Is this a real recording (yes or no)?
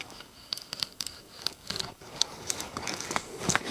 no